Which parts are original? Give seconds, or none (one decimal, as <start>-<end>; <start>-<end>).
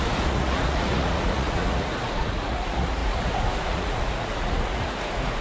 none